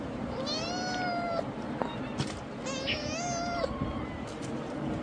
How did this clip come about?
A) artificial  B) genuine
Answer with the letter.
B